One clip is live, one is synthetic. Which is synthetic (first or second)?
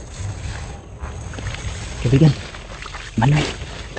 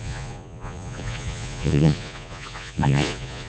second